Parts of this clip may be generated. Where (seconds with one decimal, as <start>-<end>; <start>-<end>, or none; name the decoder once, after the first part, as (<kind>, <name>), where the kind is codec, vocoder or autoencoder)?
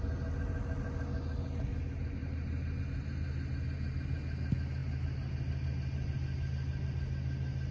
none